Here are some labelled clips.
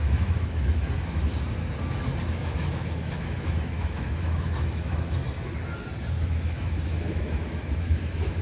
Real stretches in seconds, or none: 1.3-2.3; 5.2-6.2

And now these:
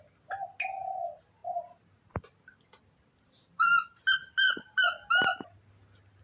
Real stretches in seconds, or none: 0.0-6.2

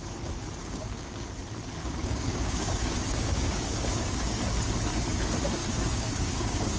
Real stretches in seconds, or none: 0.0-0.6; 1.3-1.8; 4.4-5.6